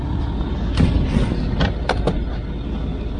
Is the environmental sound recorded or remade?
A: recorded